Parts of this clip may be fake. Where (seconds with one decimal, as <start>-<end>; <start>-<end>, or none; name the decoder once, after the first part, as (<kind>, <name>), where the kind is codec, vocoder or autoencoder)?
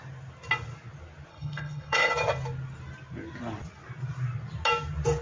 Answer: 1.3-2.1 (codec, HILCodec)